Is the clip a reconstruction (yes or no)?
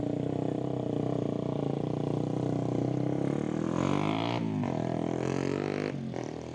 no